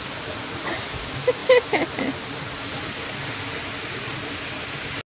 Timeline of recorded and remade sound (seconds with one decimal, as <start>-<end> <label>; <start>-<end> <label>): 0.0-5.2 recorded